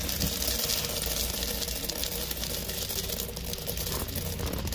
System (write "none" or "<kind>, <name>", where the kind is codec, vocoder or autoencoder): none